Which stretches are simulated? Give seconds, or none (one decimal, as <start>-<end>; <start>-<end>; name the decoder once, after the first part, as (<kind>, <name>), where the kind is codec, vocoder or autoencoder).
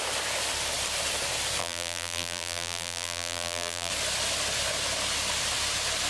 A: 1.6-3.9 (vocoder, BigVGAN v2)